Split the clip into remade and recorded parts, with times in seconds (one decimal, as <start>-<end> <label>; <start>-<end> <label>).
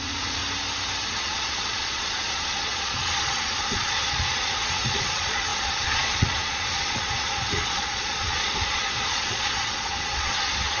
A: 0.0-0.4 remade; 0.4-1.1 recorded; 1.1-10.8 remade